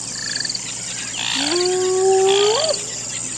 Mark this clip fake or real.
real